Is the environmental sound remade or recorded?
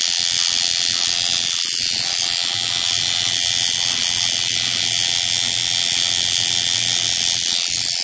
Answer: recorded